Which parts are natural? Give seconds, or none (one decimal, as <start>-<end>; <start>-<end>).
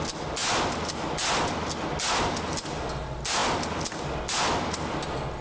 0.0-5.4